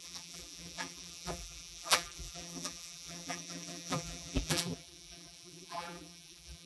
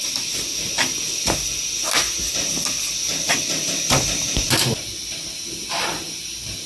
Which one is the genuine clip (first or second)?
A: second